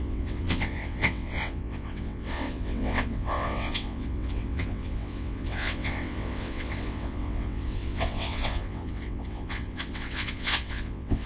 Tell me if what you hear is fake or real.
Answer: fake